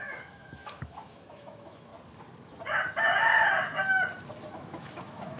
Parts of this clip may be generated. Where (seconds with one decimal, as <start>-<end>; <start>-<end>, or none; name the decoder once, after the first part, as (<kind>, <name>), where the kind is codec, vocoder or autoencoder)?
0.0-1.9 (autoencoder, DAC-VAE); 4.5-5.4

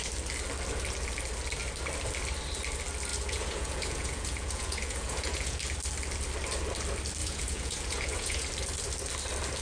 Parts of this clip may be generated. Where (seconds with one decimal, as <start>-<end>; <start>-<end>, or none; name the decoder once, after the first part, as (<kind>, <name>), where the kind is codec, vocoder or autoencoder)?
3.1-5.6 (vocoder, Vocos); 7.2-8.5

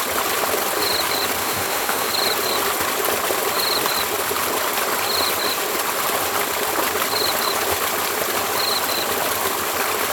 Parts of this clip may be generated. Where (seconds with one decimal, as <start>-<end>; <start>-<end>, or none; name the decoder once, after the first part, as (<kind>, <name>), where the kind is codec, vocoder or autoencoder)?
1.4-2.1 (autoencoder, DAC-VAE)

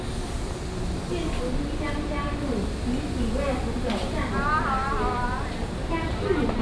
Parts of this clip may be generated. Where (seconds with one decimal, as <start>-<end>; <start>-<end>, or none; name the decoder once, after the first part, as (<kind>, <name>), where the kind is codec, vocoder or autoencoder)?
none

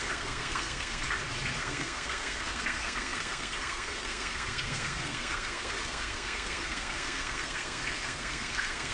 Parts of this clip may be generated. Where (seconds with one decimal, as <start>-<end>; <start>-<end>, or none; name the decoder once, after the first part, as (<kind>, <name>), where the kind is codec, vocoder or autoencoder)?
0.0-1.0 (codec, SNAC); 1.6-8.9

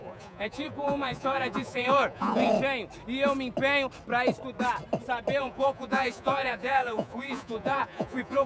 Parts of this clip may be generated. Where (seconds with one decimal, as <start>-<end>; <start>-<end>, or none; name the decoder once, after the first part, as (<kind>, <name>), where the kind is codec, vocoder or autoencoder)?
0.0-2.5 (vocoder, Vocos); 5.4-8.5